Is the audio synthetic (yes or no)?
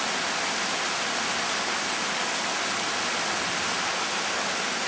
no